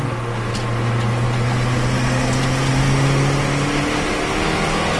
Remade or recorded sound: recorded